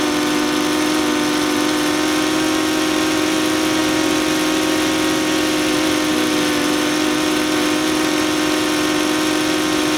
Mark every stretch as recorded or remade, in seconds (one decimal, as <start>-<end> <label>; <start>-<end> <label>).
0.0-10.0 recorded